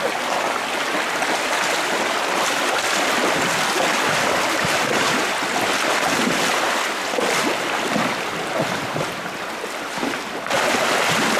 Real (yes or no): yes